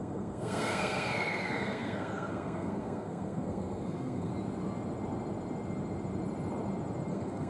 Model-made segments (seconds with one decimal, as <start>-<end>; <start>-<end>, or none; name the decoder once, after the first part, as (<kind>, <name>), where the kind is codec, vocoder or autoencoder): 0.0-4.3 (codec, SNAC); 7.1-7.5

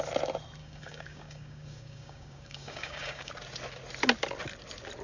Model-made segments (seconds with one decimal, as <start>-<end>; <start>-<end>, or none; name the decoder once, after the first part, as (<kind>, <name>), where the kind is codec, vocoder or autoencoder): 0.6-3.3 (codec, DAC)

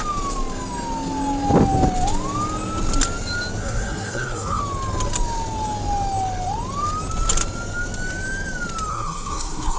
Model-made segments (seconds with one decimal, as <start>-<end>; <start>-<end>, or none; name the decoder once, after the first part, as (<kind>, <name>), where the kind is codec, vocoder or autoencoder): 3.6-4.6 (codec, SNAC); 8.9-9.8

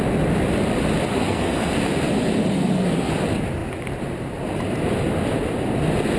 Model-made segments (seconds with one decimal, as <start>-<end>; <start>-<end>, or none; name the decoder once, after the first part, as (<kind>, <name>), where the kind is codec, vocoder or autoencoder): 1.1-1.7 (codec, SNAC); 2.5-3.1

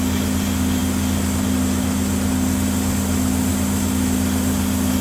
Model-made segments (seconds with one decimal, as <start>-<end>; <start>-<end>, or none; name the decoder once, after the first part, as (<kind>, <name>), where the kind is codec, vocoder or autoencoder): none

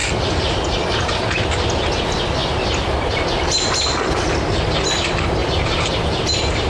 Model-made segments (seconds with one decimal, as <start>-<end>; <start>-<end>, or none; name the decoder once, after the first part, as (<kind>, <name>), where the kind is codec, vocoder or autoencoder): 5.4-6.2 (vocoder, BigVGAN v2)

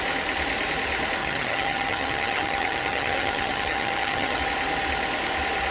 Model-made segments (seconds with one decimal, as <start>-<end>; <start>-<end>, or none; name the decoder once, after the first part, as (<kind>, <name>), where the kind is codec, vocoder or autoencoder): 1.2-4.4 (vocoder, HiFi-GAN)

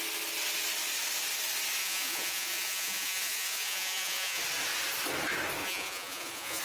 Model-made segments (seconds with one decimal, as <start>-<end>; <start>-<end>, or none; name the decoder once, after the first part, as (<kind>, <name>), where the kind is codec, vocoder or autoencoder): 1.8-4.4 (vocoder, Vocos); 5.6-6.6